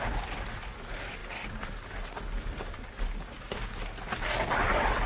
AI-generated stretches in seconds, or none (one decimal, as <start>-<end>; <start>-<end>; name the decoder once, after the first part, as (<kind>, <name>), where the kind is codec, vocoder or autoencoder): none